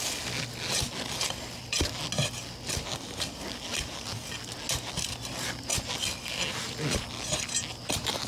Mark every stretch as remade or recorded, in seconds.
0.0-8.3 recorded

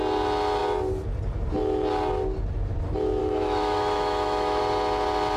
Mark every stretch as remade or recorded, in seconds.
0.0-3.2 recorded; 3.2-4.6 remade; 4.6-5.4 recorded